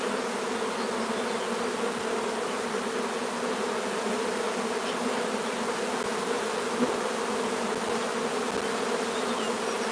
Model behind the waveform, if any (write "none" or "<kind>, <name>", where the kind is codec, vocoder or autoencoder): none